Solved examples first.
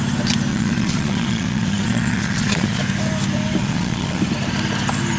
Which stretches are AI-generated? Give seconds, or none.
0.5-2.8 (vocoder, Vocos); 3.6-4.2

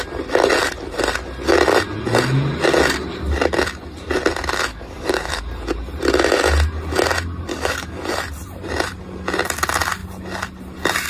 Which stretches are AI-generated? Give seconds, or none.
4.7-5.4 (codec, DAC); 7.5-8.0

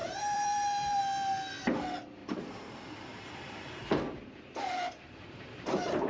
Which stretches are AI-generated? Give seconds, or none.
0.0-1.0 (vocoder, BigVGAN v2); 2.2-6.1

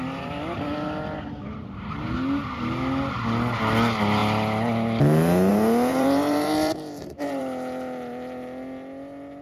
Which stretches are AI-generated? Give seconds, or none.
5.9-7.4 (vocoder, BigVGAN v2)

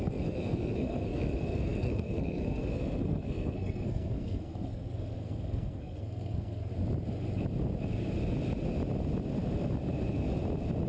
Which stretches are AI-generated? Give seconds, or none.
0.0-6.7 (codec, SNAC)